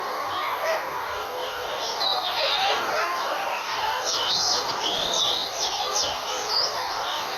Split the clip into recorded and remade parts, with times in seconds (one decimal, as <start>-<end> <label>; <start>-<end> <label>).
0.0-7.4 remade